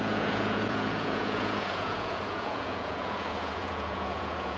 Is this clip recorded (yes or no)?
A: no